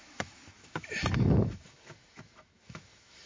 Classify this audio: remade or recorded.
remade